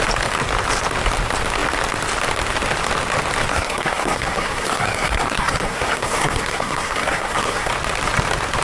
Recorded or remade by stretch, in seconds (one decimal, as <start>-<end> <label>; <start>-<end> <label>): 0.0-3.5 recorded; 3.5-7.7 remade; 7.7-8.6 recorded

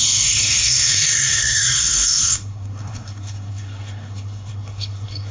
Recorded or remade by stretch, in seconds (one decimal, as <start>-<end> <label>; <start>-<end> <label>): 0.0-5.3 remade

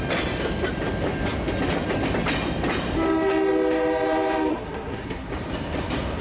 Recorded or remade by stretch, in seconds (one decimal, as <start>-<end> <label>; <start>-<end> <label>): 0.0-4.5 recorded; 4.5-5.3 remade; 5.3-6.2 recorded

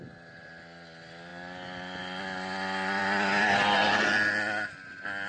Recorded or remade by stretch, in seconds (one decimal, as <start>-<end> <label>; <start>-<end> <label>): 0.0-5.3 recorded

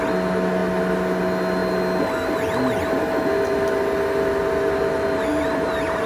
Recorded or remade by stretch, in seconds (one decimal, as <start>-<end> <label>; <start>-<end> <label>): 0.0-6.1 recorded

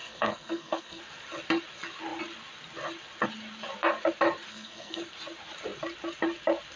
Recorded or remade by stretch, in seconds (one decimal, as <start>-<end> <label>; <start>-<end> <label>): 0.0-1.0 remade; 1.0-4.5 recorded; 4.5-5.0 remade; 5.0-6.8 recorded

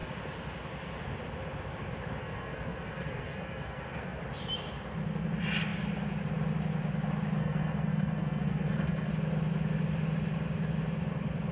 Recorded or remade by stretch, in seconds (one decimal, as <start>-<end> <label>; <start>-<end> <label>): 0.0-2.2 recorded; 2.2-4.2 remade; 4.2-7.4 recorded; 7.4-9.1 remade; 9.1-11.5 recorded

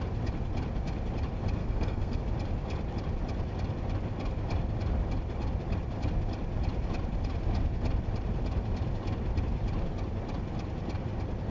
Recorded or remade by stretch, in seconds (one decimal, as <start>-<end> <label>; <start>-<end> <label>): 0.0-1.6 recorded; 1.6-2.2 remade; 2.2-11.5 recorded